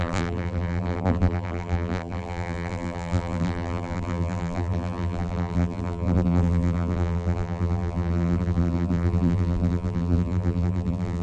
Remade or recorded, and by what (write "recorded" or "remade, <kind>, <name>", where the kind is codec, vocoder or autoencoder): remade, vocoder, BigVGAN v2